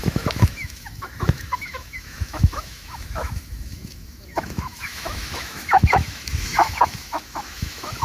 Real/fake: fake